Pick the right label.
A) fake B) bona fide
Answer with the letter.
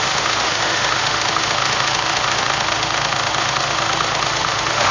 A